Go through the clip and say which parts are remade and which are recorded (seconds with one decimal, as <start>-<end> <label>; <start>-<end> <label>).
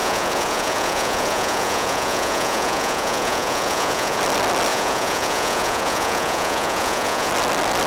0.0-4.2 remade; 4.2-4.7 recorded; 4.7-7.3 remade; 7.3-7.9 recorded